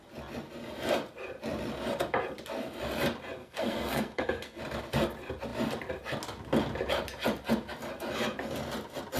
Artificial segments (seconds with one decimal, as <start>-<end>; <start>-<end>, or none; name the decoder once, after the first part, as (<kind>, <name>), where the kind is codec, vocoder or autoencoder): 3.4-4.6 (codec, SNAC)